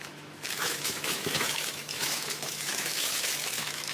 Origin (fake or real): fake